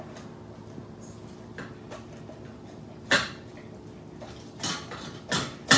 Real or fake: real